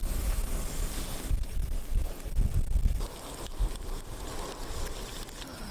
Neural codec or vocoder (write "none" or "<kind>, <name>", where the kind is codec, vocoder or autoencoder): none